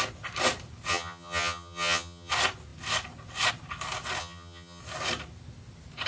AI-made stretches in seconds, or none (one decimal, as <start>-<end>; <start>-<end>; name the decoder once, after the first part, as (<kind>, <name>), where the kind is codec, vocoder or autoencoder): 0.9-2.3 (vocoder, HiFi-GAN); 4.2-4.8